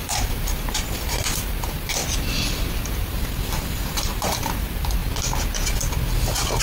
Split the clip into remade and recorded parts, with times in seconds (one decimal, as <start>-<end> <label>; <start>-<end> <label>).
0.0-2.0 remade; 2.0-2.8 recorded; 2.8-5.0 remade; 5.0-6.6 recorded